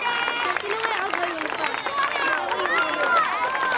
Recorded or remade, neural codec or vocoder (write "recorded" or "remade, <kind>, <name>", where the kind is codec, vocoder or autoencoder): recorded